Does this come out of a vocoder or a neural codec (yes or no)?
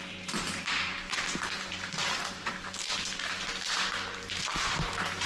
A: yes